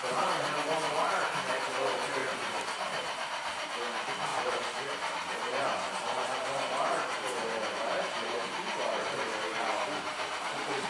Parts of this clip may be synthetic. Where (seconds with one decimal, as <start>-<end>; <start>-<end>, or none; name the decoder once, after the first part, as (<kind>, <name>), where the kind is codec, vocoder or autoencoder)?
0.0-10.9 (vocoder, BigVGAN v2)